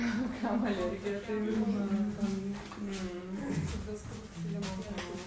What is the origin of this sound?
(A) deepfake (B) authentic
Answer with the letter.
B